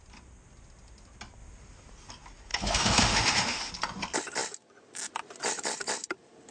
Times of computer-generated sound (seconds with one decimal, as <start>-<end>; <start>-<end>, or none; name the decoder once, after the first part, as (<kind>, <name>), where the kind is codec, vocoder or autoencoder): 2.5-3.7 (autoencoder, DAC-VAE)